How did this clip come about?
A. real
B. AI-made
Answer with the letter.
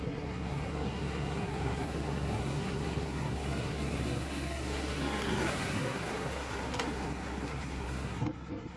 B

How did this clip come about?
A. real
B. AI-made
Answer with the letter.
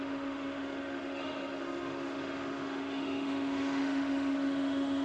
B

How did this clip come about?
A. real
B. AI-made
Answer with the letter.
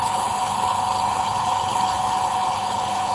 B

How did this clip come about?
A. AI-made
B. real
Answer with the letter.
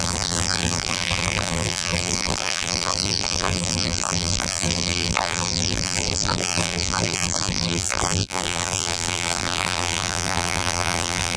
A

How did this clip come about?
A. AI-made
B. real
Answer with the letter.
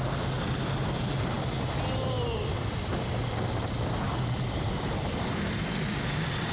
B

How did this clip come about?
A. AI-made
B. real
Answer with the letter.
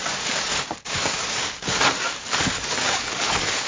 A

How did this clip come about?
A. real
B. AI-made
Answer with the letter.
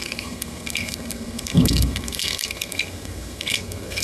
B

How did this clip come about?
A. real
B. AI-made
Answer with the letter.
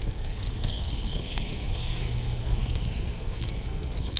B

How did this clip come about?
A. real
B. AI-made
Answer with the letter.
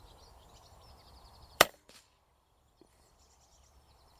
B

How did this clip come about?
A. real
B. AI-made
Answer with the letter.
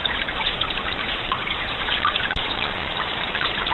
B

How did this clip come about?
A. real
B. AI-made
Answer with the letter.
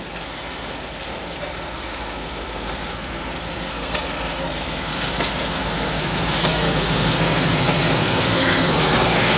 B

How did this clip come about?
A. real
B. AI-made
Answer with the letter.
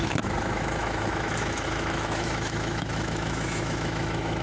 B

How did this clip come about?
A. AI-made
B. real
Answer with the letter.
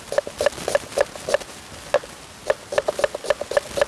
B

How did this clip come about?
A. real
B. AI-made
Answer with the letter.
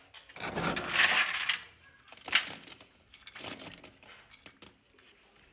A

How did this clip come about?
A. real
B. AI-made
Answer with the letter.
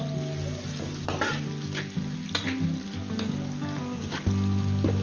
A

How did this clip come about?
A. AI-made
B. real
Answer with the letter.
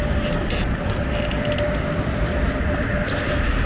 B